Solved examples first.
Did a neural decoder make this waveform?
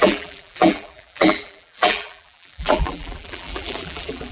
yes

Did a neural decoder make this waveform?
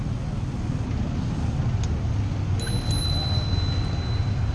no